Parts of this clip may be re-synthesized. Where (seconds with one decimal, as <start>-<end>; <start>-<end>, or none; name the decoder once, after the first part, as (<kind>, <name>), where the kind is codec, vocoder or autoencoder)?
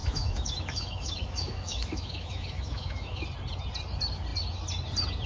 0.0-3.2 (autoencoder, DAC-VAE)